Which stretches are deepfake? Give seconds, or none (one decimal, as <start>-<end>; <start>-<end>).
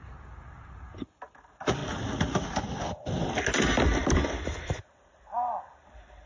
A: none